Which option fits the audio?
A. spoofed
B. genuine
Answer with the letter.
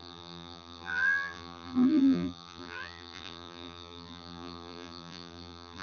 A